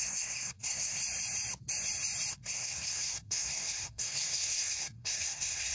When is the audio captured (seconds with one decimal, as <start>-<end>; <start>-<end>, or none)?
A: 1.0-2.3